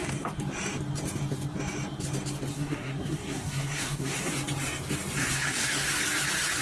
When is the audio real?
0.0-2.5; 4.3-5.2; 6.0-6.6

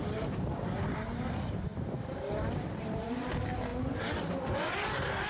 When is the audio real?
0.0-1.7; 3.3-5.3

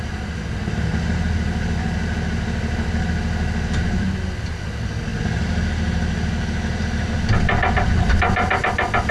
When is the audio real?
0.0-9.1

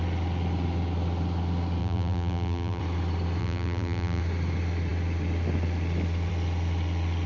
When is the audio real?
0.0-1.8; 2.8-3.4; 4.2-7.3